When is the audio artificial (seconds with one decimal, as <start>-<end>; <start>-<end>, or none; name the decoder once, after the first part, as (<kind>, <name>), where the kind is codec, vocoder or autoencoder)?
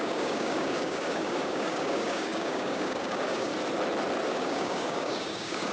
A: 0.0-3.5 (codec, DAC); 4.3-5.7